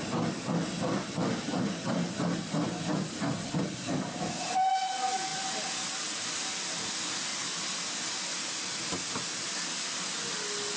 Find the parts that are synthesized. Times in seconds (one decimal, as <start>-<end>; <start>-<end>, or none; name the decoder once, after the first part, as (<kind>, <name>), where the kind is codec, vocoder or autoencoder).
none